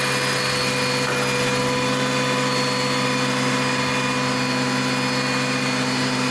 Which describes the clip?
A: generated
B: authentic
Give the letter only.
B